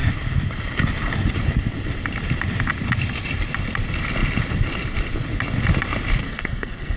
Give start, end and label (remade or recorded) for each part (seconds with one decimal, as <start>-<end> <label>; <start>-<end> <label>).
0.0-6.2 recorded; 6.2-7.0 remade